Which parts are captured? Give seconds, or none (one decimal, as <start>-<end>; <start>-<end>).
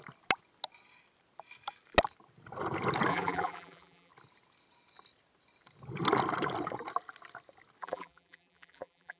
0.0-3.1; 4.1-7.8